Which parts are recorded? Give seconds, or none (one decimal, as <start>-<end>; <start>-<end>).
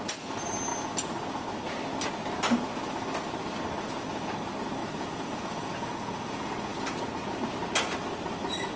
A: 0.0-4.8; 7.3-8.8